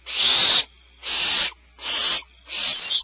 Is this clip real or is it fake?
real